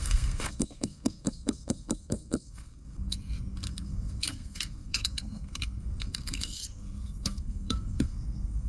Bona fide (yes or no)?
no